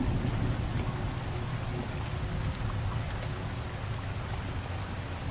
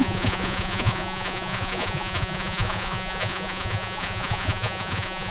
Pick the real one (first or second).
first